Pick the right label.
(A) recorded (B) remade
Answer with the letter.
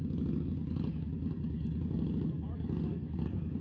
B